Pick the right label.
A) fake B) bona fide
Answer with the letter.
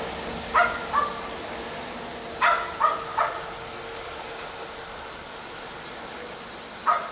B